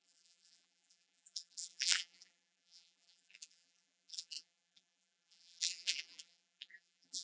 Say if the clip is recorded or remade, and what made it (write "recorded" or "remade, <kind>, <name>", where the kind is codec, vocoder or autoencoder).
remade, vocoder, BigVGAN v2